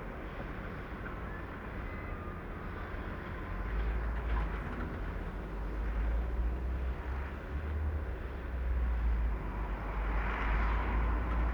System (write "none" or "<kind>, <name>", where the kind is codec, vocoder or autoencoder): none